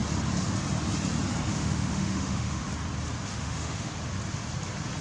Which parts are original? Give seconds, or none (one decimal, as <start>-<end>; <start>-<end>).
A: 0.0-1.5; 2.6-3.3; 3.9-5.0